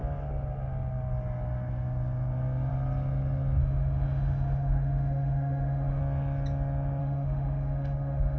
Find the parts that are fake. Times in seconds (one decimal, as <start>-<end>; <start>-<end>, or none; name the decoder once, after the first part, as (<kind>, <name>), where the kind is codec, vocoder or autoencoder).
3.6-6.0 (autoencoder, DAC-VAE); 7.0-8.4